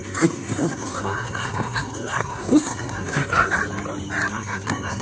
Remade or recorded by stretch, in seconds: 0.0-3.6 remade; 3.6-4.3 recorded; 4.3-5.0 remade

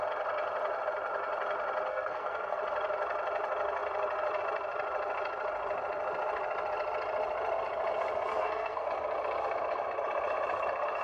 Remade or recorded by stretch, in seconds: 0.0-1.9 recorded; 1.9-2.6 remade; 2.6-8.3 recorded; 8.3-8.9 remade; 8.9-11.0 recorded

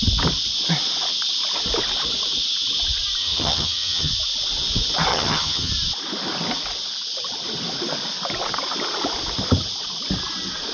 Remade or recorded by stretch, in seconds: 0.0-3.2 recorded; 3.2-4.1 remade; 4.1-5.1 recorded; 5.1-5.7 remade; 5.7-10.7 recorded

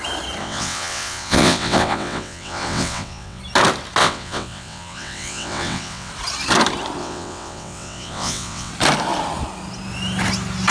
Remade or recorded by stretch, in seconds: 0.0-0.4 recorded; 0.4-3.4 remade; 3.4-4.0 recorded; 4.0-6.1 remade; 6.1-7.0 recorded; 7.0-8.7 remade; 8.7-10.7 recorded

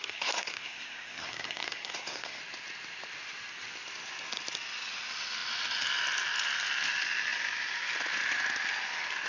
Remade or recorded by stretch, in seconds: 0.0-2.4 remade; 2.4-9.3 recorded

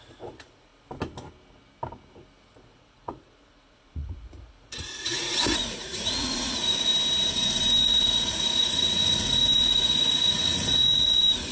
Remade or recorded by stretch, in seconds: 0.0-0.7 remade; 0.7-2.5 recorded; 2.5-6.9 remade; 6.9-7.8 recorded; 7.8-11.5 remade

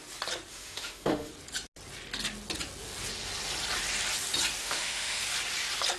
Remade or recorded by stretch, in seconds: 0.0-0.5 recorded; 0.5-1.3 remade; 1.3-4.6 recorded; 4.6-5.2 remade; 5.2-6.0 recorded